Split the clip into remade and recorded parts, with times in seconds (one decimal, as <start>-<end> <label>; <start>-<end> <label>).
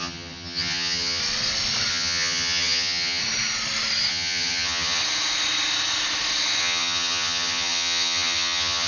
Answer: 0.0-1.2 remade; 1.2-1.9 recorded; 1.9-3.2 remade; 3.2-4.1 recorded; 4.1-5.0 remade; 5.0-6.6 recorded; 6.6-8.9 remade